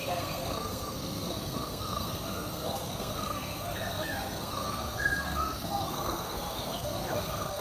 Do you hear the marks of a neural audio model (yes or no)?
yes